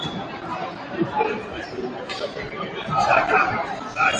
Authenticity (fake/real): fake